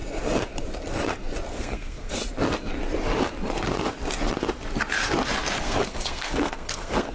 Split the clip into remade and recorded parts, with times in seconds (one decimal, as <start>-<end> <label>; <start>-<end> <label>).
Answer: 0.0-1.5 recorded; 1.5-2.2 remade; 2.2-5.6 recorded; 5.6-7.1 remade